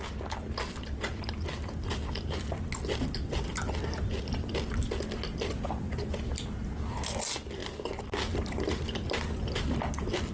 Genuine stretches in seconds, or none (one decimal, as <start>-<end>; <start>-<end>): 0.0-10.3